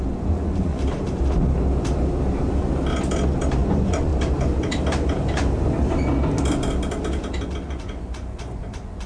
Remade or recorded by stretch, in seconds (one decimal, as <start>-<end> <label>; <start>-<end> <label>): 0.0-0.8 remade; 0.8-3.6 recorded; 3.6-4.1 remade; 4.1-7.7 recorded; 7.7-9.1 remade